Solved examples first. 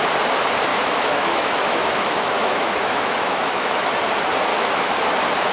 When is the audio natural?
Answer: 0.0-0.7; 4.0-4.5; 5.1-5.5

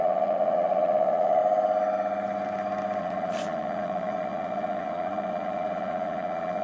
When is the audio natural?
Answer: 1.4-3.0

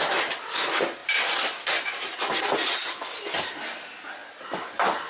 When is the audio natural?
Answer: 0.0-5.1

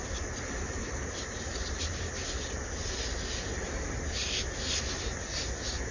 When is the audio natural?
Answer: 0.0-5.9